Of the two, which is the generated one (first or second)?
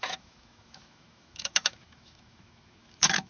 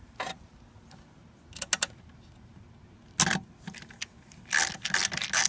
first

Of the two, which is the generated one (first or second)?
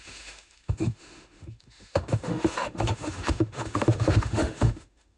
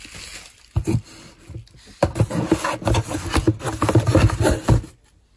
first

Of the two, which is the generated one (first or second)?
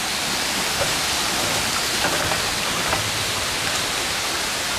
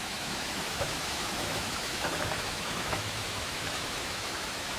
second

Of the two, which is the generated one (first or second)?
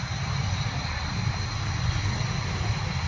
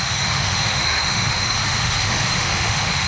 second